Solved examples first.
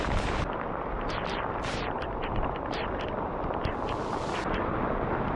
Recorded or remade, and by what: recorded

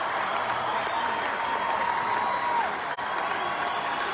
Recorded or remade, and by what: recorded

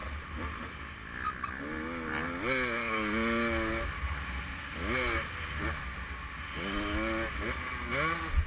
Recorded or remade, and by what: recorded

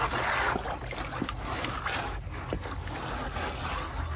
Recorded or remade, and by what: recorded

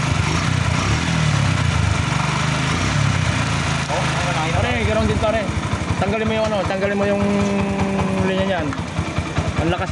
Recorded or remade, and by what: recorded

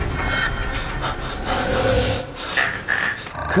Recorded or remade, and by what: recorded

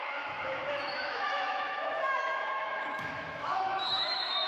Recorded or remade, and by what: remade, autoencoder, DAC-VAE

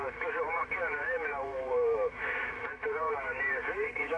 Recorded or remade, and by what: remade, autoencoder, DAC-VAE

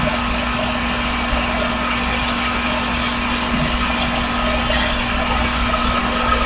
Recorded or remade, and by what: recorded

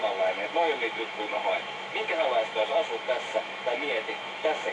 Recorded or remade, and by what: remade, autoencoder, DAC-VAE